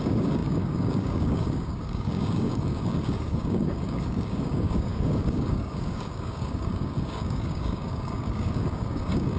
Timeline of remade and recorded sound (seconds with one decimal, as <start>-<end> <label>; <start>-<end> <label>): 0.0-9.4 remade